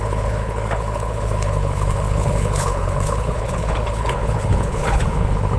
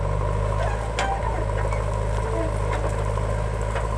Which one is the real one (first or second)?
second